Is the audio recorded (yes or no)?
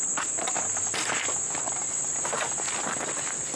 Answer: yes